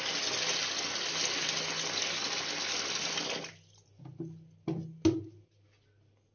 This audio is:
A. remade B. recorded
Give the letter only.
B